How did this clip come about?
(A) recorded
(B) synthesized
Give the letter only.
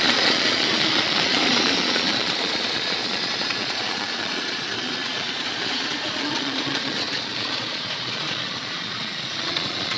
B